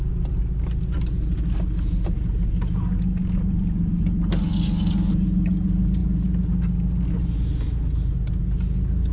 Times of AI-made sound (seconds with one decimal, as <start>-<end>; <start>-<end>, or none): none